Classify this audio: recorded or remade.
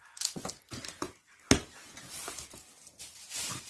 recorded